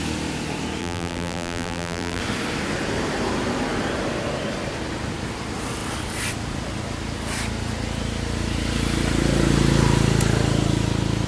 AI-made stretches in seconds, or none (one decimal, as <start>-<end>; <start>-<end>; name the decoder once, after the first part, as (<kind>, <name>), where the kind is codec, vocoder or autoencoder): 0.8-2.2 (vocoder, BigVGAN v2)